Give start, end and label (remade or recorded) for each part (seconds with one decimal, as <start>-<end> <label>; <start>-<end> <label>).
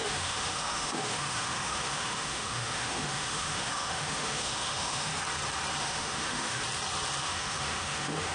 0.0-5.1 remade; 5.1-5.8 recorded; 5.8-6.6 remade; 6.6-7.2 recorded; 7.2-8.3 remade